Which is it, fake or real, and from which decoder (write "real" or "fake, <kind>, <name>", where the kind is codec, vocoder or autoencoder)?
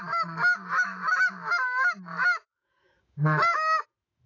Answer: fake, autoencoder, DAC-VAE